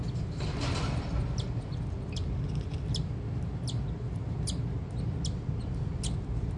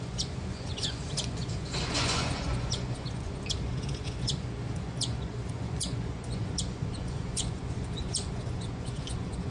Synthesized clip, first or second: second